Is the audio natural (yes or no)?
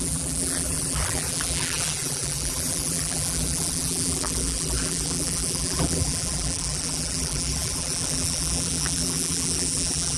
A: no